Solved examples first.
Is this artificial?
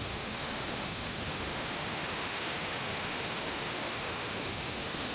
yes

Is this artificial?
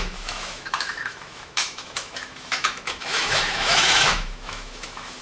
yes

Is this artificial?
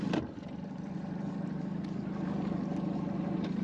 no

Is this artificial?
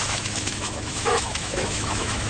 yes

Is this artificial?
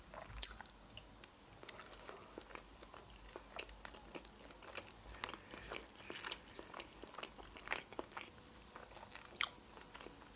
no